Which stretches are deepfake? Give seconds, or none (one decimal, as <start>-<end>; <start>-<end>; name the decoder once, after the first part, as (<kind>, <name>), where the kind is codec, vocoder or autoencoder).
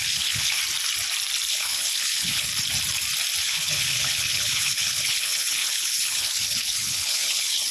0.0-0.6 (codec, HILCodec); 1.5-2.5; 3.4-7.7